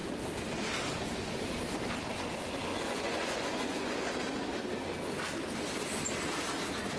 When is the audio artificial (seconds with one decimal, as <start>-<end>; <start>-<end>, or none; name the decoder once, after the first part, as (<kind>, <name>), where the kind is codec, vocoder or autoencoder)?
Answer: 2.7-4.1 (vocoder, Vocos)